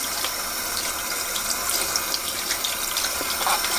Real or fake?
real